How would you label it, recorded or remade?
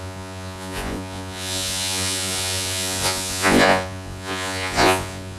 remade